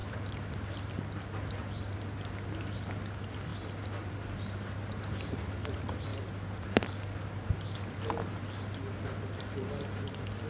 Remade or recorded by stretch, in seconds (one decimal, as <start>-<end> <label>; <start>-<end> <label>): 0.0-2.9 remade; 2.9-3.5 recorded; 3.5-4.1 remade; 4.1-6.1 recorded; 6.1-7.0 remade; 7.0-10.5 recorded